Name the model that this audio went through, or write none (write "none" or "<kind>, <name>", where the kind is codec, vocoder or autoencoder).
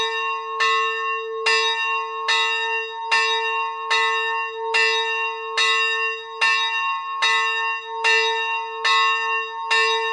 none